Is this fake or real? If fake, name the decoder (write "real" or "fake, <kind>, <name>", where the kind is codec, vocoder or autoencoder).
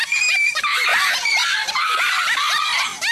real